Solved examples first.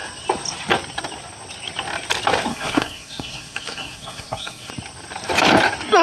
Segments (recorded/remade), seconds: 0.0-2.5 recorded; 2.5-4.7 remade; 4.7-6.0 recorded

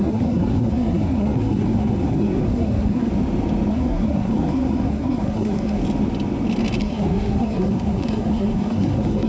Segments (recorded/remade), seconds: 0.0-3.1 remade; 3.1-3.7 recorded; 3.7-5.8 remade; 5.8-6.8 recorded; 6.8-9.3 remade